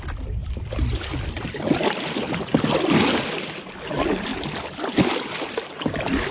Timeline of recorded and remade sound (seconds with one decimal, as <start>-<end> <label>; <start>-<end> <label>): 0.0-6.3 recorded